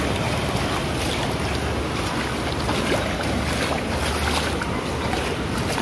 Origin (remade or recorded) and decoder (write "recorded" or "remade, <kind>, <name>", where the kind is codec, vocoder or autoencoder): recorded